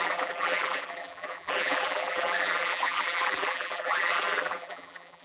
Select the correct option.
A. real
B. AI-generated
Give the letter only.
B